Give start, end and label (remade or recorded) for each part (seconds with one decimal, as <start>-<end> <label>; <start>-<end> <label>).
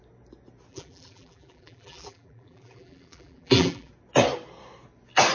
0.0-0.7 recorded; 0.7-3.9 remade; 3.9-5.3 recorded